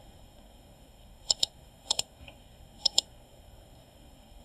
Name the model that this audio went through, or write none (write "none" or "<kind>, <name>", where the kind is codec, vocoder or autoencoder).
codec, SNAC